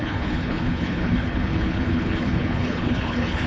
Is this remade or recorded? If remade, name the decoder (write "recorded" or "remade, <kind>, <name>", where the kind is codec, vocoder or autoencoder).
remade, codec, HILCodec